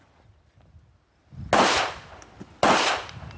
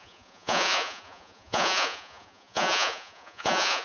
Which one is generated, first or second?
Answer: second